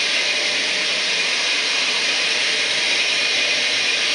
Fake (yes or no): yes